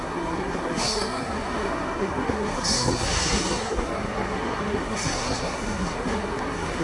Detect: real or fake fake